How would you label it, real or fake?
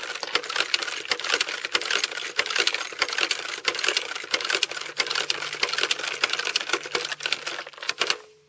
real